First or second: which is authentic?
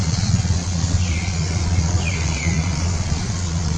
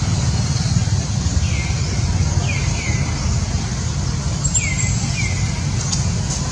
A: second